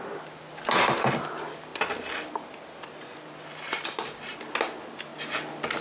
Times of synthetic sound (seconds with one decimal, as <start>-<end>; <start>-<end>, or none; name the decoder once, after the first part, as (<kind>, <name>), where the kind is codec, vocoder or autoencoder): none